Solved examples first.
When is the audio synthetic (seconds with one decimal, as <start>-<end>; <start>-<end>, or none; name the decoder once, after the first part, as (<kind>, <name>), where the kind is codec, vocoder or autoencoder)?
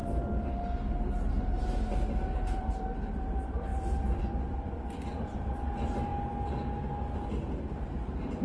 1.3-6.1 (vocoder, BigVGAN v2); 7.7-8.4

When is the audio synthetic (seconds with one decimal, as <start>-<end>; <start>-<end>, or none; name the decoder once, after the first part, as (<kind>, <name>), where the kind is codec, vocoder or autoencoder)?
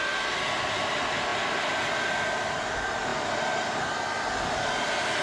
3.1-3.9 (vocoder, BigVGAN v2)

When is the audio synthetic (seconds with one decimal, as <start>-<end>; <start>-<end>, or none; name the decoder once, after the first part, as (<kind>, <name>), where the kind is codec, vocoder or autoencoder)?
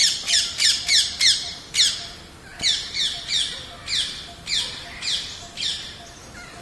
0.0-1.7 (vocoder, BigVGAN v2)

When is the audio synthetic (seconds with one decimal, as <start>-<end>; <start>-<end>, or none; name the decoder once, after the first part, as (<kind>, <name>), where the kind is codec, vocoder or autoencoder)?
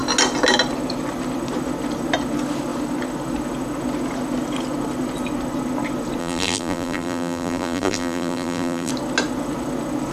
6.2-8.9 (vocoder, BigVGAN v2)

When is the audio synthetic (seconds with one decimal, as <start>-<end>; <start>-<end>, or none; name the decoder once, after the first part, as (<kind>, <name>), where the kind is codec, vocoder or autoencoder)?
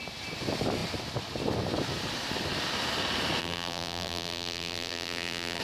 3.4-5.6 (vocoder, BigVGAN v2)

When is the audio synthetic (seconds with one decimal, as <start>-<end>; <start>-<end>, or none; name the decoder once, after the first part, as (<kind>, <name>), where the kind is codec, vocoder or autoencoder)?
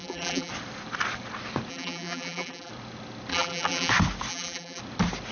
0.0-0.5 (vocoder, BigVGAN v2); 1.7-2.7; 3.3-3.9; 4.3-4.8